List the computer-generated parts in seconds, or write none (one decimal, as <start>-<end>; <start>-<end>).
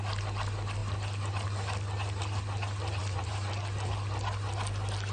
3.0-3.5